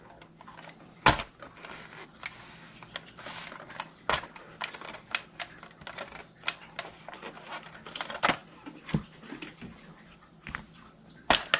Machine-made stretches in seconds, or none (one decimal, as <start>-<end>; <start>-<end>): none